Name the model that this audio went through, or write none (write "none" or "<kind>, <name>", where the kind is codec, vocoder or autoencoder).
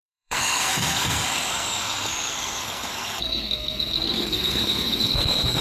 codec, SNAC